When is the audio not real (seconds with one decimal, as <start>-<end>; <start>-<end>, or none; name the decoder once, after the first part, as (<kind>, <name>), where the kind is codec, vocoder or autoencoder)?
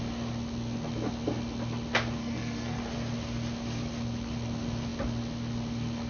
2.2-2.8 (codec, SNAC)